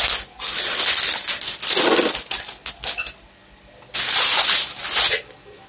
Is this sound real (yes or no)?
yes